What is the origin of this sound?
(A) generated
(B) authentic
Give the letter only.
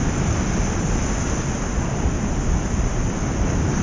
B